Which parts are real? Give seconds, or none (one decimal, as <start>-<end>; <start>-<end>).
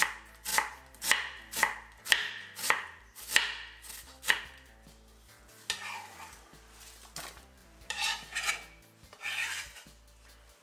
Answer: 0.0-7.6; 8.5-10.6